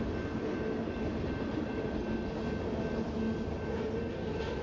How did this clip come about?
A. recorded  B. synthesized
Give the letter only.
A